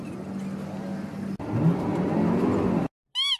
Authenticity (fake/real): real